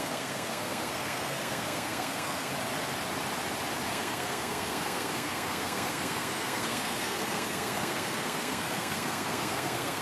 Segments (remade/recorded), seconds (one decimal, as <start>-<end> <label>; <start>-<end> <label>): 0.0-2.5 remade; 2.5-3.9 recorded; 3.9-10.0 remade